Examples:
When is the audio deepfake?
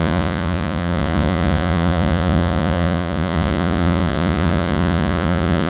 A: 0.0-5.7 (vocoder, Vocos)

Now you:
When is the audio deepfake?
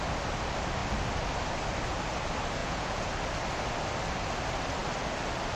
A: 2.6-3.1 (vocoder, Vocos)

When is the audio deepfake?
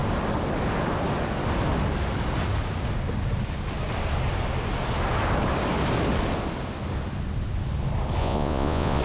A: 8.2-9.0 (vocoder, Vocos)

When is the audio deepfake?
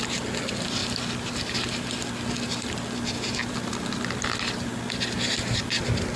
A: none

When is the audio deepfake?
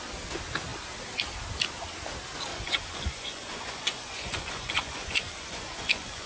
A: 2.5-6.3 (vocoder, Vocos)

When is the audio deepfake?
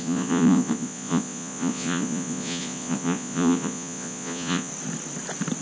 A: 0.0-4.7 (vocoder, Vocos)